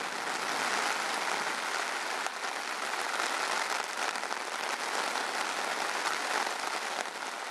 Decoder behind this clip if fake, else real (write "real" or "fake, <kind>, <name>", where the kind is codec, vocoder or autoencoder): real